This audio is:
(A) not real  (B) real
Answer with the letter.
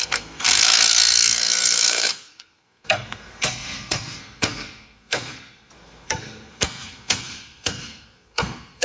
A